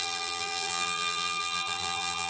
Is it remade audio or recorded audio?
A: remade